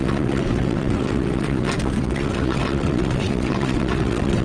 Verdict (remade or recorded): remade